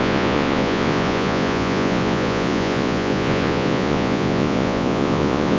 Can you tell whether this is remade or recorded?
remade